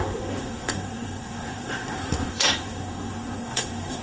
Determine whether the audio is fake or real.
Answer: fake